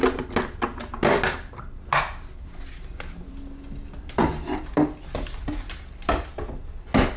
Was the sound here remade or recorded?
recorded